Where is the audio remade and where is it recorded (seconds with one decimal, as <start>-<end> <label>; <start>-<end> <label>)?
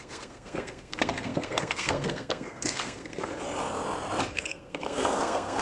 0.0-3.3 remade; 3.3-4.3 recorded; 4.3-5.6 remade